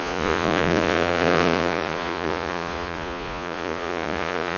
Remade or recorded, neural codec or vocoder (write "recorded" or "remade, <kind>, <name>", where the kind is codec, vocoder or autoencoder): remade, vocoder, Vocos